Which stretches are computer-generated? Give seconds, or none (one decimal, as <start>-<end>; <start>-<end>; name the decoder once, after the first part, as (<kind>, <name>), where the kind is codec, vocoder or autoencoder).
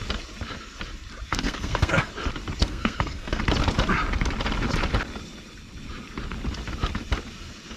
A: 1.3-2.1 (codec, SNAC); 2.6-3.4